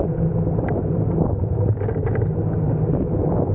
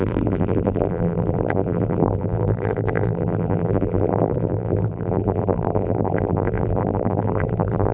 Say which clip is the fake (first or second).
second